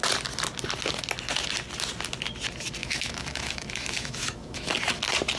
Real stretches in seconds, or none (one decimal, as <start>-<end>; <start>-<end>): 0.0-2.8; 4.7-5.4